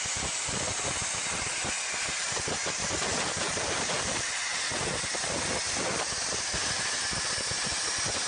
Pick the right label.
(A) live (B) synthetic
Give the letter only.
A